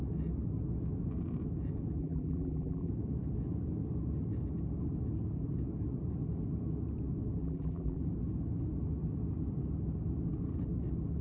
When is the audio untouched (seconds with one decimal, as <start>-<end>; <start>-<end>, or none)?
0.0-2.0; 2.9-7.4; 8.0-11.2